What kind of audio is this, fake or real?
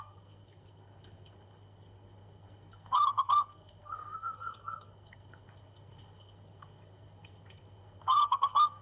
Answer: fake